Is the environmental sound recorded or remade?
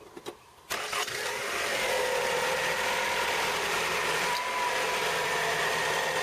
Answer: remade